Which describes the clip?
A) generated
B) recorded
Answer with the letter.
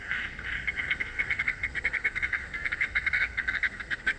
A